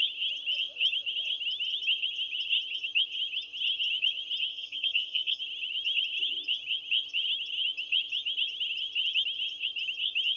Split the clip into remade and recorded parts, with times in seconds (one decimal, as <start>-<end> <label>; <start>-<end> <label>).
0.0-4.5 recorded; 4.5-5.4 remade; 5.4-10.4 recorded